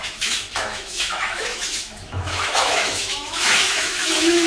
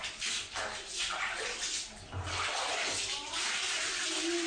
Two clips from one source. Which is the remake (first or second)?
first